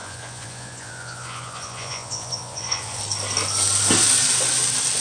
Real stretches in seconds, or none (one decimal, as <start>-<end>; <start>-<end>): 3.0-5.0